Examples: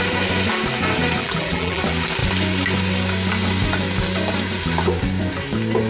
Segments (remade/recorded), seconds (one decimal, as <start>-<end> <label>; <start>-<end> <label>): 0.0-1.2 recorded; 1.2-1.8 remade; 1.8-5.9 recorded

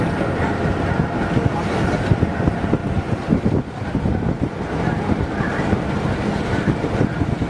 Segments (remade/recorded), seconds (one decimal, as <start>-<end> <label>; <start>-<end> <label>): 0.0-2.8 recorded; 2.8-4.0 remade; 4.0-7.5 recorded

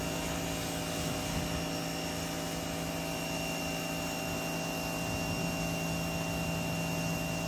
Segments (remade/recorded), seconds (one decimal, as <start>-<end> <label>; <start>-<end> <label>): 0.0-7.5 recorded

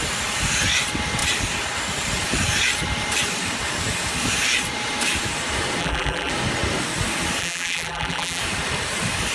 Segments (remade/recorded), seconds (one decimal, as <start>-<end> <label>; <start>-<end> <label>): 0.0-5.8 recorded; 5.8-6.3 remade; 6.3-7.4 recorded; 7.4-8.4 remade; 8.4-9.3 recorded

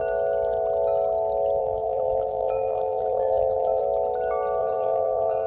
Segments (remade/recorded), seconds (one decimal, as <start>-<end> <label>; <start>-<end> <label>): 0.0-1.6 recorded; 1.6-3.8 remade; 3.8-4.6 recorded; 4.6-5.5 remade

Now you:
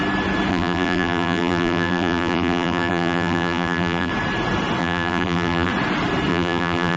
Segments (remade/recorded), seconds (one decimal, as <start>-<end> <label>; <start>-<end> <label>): 0.0-0.5 recorded; 0.5-4.1 remade; 4.1-4.8 recorded; 4.8-5.7 remade; 5.7-6.3 recorded; 6.3-7.0 remade